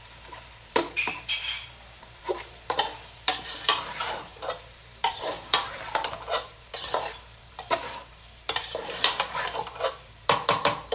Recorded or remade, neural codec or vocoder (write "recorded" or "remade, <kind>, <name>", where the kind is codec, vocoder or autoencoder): remade, vocoder, BigVGAN v2